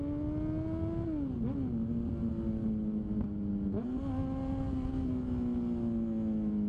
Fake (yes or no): no